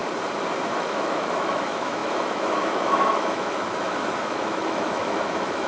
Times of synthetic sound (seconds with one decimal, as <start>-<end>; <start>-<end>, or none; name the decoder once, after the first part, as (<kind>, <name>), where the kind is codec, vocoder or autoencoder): 0.7-5.7 (autoencoder, DAC-VAE)